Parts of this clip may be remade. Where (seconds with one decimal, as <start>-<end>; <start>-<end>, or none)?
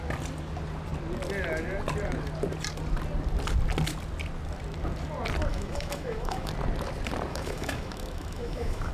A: 5.5-6.5; 7.3-8.9